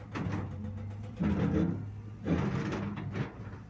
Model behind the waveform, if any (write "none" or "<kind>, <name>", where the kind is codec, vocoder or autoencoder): none